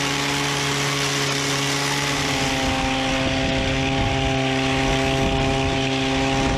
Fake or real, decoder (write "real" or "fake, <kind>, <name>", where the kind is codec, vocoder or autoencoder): real